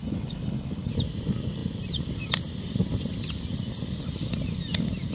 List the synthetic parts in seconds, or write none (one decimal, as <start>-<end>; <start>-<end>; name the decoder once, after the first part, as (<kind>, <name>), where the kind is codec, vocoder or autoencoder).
0.0-0.9 (codec, HILCodec)